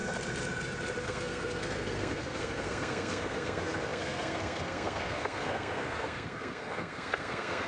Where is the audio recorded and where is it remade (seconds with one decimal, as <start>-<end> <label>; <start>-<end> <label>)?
0.0-1.0 recorded; 1.0-7.7 remade